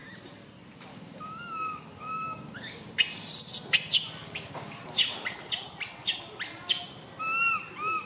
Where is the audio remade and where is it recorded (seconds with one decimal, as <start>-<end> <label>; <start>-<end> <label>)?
0.0-0.9 recorded; 0.9-2.9 remade; 2.9-4.2 recorded; 4.2-4.8 remade; 4.8-8.1 recorded